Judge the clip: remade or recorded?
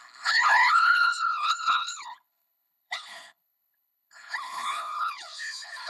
remade